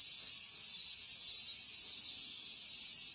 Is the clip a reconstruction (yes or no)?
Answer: no